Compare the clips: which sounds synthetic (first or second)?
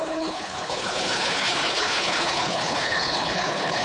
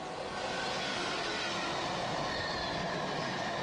first